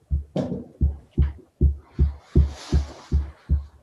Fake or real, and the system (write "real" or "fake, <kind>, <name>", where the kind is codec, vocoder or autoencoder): real